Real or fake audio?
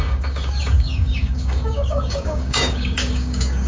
fake